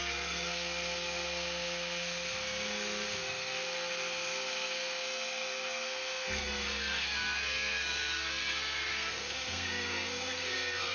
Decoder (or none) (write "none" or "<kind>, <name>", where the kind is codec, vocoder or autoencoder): codec, SNAC